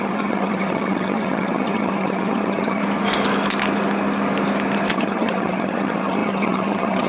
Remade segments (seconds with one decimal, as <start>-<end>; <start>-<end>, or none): 0.0-2.8; 4.9-7.1